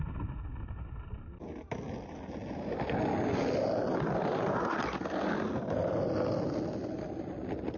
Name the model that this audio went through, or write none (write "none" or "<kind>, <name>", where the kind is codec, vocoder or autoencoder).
none